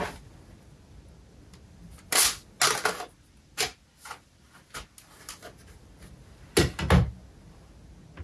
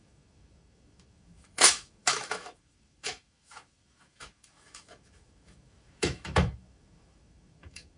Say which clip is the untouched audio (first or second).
first